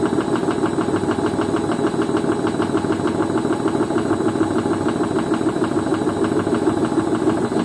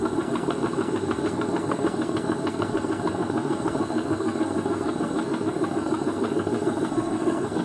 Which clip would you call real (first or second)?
first